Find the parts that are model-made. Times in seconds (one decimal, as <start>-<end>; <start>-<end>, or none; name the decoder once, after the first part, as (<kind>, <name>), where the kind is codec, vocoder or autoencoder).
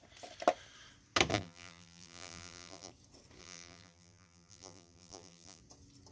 1.3-2.9 (vocoder, BigVGAN v2); 3.4-5.6